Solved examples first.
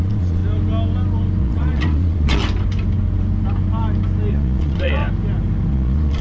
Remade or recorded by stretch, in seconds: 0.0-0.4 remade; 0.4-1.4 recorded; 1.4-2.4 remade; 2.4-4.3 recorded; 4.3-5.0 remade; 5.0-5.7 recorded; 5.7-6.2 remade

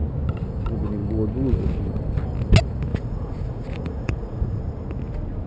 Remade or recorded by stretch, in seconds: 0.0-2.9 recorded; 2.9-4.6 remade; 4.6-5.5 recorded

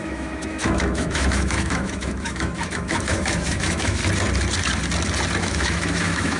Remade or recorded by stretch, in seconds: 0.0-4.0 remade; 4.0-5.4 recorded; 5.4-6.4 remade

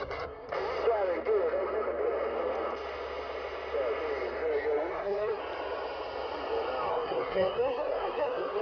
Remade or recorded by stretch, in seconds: 0.0-0.5 remade; 0.5-4.9 recorded; 4.9-5.4 remade; 5.4-6.9 recorded; 6.9-8.6 remade

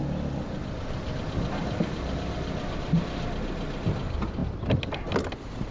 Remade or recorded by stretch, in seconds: 0.0-3.4 remade; 3.4-5.7 recorded

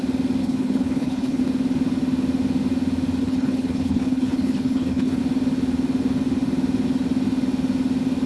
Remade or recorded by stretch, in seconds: 0.0-0.4 recorded; 0.4-1.4 remade; 1.4-3.2 recorded; 3.2-5.2 remade; 5.2-8.3 recorded

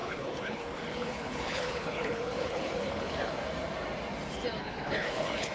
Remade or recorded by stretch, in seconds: 0.0-3.3 remade; 3.3-4.6 recorded; 4.6-5.5 remade

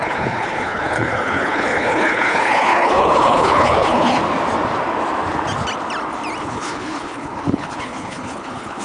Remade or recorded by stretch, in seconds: 0.0-4.2 remade; 4.2-6.4 recorded; 6.4-8.8 remade